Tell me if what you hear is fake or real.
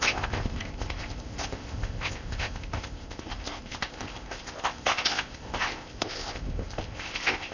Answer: fake